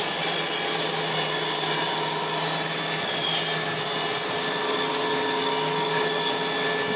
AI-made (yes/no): no